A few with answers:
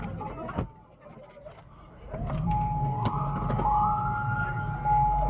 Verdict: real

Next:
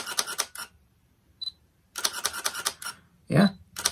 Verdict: fake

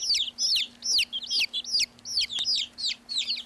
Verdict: real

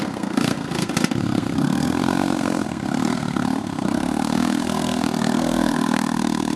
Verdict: fake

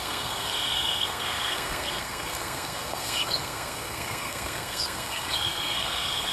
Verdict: fake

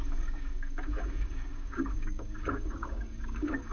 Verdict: fake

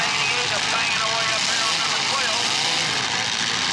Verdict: real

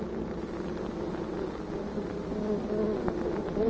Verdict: real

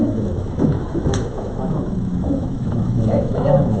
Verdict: fake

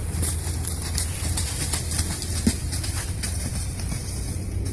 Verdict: fake